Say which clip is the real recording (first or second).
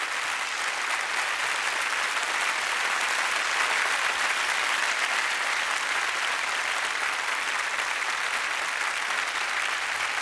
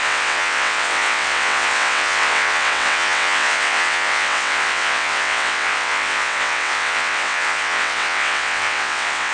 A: first